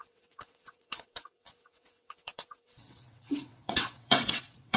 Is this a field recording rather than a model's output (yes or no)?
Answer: no